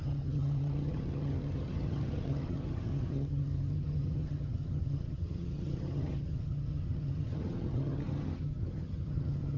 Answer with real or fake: fake